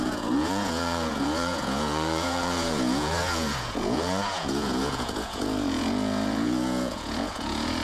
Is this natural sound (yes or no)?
no